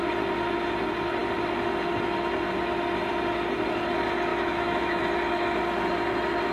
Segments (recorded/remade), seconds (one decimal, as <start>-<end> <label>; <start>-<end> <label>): 0.0-4.3 recorded; 4.3-5.0 remade; 5.0-6.5 recorded